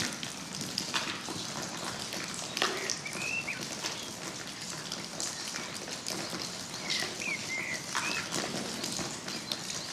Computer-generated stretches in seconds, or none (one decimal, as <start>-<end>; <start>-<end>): none